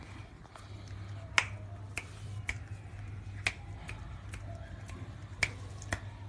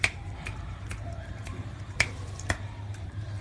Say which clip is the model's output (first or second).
second